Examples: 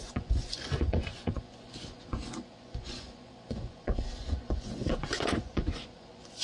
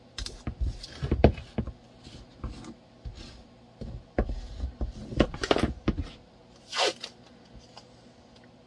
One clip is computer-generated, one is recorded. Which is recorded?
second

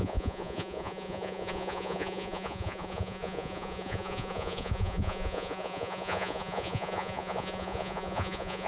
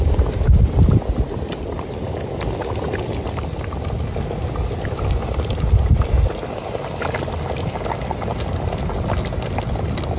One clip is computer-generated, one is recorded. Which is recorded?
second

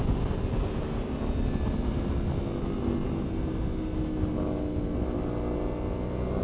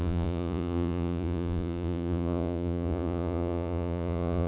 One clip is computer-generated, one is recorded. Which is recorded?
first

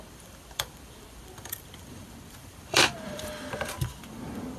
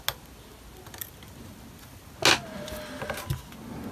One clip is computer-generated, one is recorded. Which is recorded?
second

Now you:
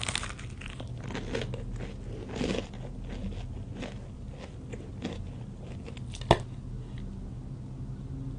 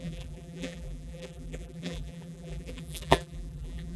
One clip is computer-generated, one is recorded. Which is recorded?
first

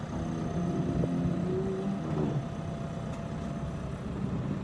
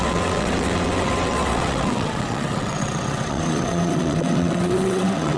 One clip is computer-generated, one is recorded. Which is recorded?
first